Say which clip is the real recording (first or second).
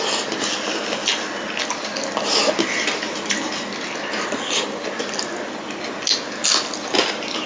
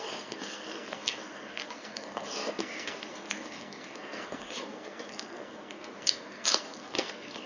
first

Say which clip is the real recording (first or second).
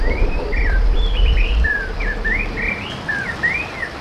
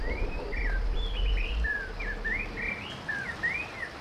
second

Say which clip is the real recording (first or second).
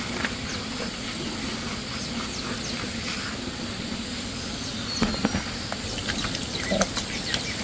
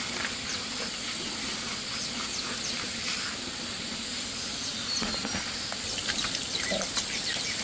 first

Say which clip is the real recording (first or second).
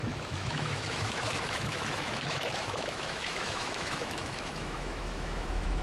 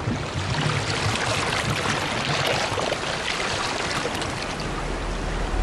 second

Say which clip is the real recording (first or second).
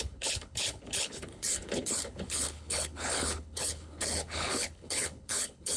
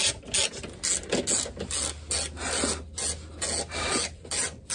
second